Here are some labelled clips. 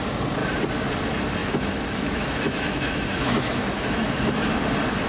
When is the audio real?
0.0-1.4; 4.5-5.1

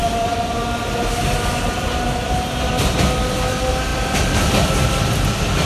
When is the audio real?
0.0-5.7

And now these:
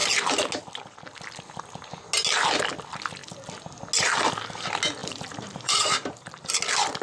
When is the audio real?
0.0-5.0; 6.5-7.0

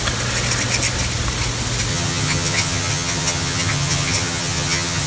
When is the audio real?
0.0-1.9

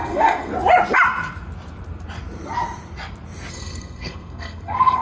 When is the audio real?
0.5-3.5

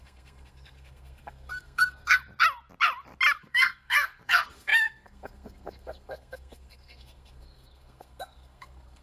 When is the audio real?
2.2-3.4

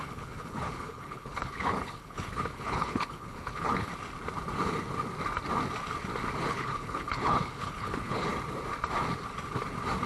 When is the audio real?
3.9-6.4; 8.3-10.1